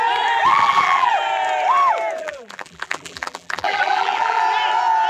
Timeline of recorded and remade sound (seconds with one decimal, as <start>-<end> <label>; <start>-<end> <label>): 0.0-0.5 recorded; 0.5-1.1 remade; 1.1-2.2 recorded; 2.2-4.4 remade; 4.4-5.1 recorded